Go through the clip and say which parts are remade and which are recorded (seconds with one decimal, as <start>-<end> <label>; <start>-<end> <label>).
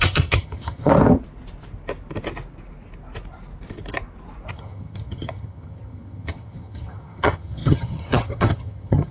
0.0-0.9 remade; 0.9-4.5 recorded; 4.5-9.1 remade